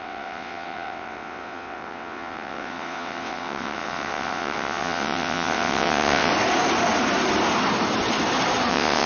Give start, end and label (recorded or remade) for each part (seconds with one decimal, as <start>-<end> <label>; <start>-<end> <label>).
0.0-6.3 remade; 6.3-8.7 recorded; 8.7-9.1 remade